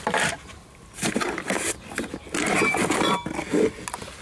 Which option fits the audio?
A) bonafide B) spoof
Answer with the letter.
A